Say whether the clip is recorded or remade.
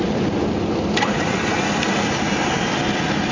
recorded